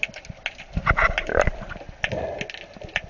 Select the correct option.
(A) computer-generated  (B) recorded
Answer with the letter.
B